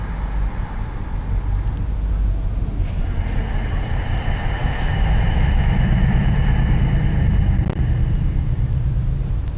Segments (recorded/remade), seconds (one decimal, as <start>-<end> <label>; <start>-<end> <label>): 0.0-4.6 recorded; 4.6-6.4 remade; 6.4-9.6 recorded